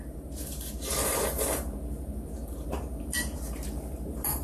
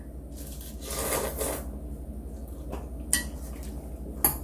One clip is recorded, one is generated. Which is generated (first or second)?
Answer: first